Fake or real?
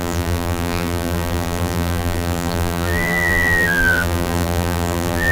fake